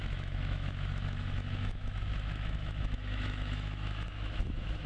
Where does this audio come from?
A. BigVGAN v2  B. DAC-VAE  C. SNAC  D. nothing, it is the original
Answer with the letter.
B